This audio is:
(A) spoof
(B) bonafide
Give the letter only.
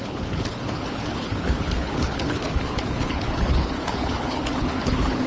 A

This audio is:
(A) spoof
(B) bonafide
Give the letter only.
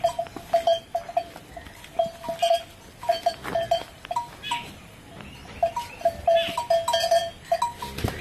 B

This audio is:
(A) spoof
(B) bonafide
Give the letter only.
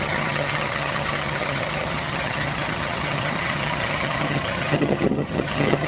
A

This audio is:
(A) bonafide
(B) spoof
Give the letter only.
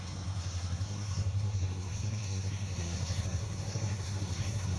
B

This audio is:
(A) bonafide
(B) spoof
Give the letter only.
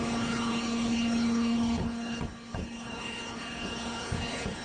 B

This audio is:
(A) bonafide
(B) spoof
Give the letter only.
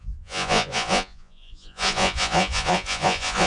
B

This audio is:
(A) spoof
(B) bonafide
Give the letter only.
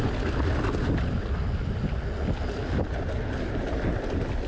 B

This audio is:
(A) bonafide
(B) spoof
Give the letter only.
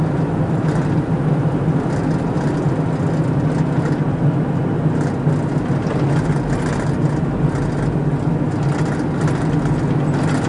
A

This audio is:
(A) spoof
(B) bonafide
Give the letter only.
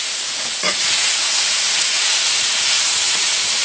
A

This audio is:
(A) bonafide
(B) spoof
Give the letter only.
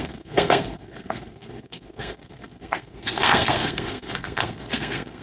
B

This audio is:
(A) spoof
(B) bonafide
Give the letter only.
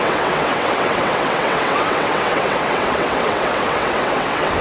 A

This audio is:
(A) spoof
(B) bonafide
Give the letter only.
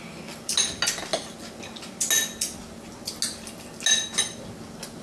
B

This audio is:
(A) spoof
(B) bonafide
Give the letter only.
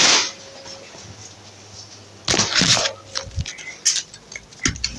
B